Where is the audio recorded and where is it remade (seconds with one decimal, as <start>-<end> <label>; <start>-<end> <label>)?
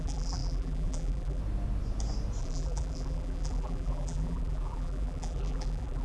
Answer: 0.0-1.4 remade; 1.4-2.4 recorded; 2.4-6.0 remade